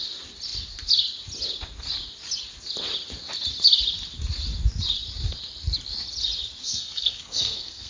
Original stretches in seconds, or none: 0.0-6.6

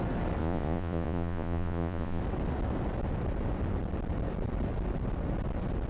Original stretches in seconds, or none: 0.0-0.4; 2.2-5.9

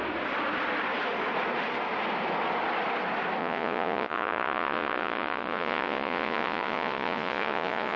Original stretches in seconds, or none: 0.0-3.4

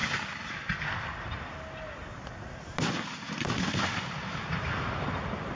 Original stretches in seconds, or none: 0.0-5.5

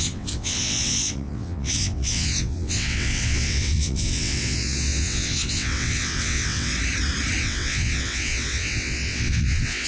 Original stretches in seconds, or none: 6.7-7.4

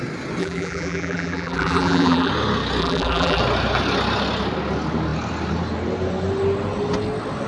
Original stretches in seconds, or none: 0.0-0.4; 2.3-2.8; 3.4-7.5